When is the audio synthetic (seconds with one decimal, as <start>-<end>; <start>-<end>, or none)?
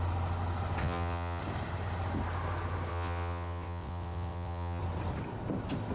0.8-1.4; 2.9-4.8